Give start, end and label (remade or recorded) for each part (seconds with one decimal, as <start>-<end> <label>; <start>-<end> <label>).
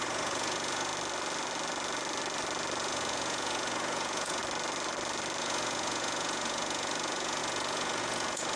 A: 0.0-0.9 remade; 0.9-2.8 recorded; 2.8-4.4 remade; 4.4-5.4 recorded; 5.4-8.6 remade